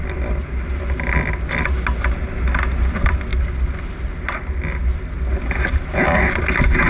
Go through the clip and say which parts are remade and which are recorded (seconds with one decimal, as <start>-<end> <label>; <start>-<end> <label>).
0.0-6.9 recorded